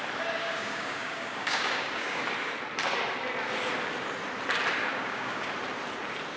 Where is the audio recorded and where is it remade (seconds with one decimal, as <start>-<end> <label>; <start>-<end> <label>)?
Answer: 0.0-0.4 recorded; 0.4-2.2 remade; 2.2-4.9 recorded; 4.9-5.5 remade; 5.5-6.4 recorded